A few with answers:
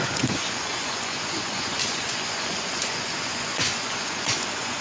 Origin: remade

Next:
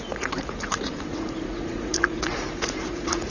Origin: remade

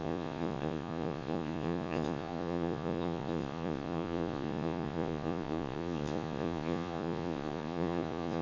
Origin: remade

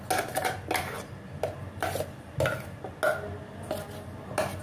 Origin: recorded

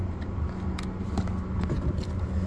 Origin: recorded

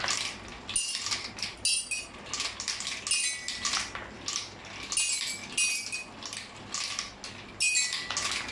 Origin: recorded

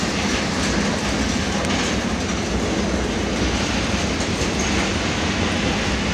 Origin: recorded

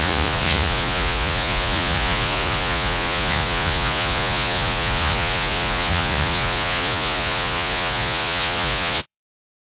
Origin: remade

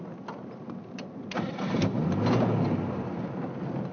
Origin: recorded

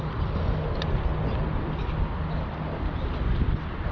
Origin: recorded